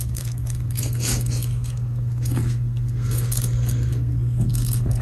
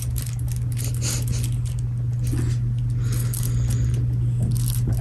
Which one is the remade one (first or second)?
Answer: first